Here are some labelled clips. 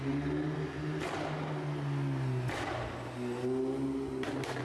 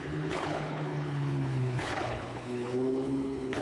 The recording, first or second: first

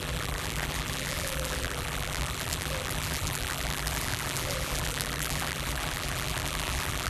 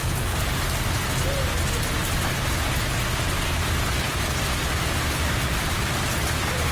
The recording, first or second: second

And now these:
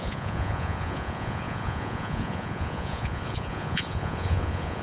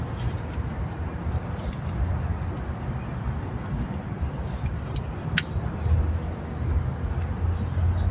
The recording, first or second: second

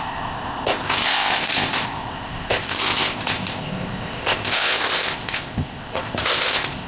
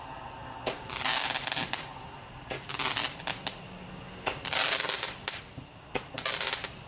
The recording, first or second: second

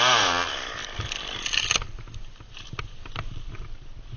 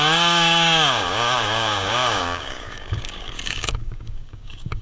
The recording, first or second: first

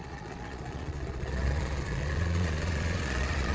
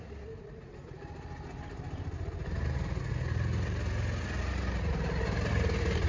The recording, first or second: second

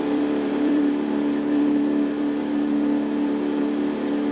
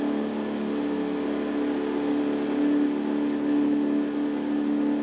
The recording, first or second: second